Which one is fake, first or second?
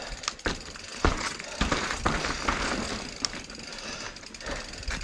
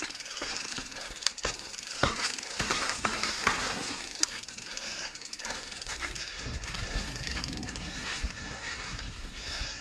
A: second